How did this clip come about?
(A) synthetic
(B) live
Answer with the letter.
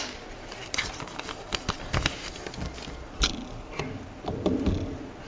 B